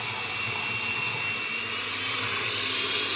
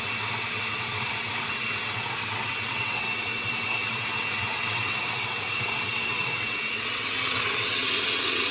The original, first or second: first